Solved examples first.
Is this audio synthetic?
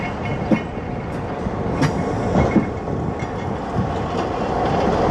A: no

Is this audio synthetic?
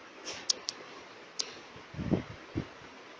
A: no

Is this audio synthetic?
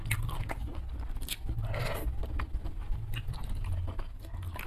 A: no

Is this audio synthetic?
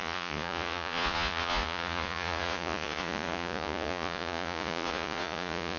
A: yes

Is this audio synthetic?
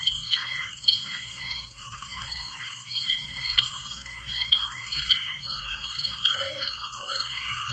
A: yes